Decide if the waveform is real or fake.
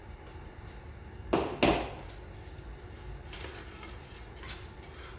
real